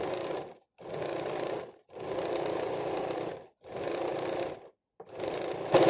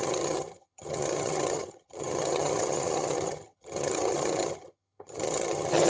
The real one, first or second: first